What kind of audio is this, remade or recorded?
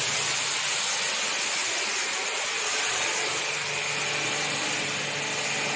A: recorded